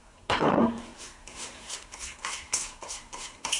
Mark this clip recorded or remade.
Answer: remade